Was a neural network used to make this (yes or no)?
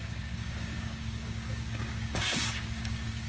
yes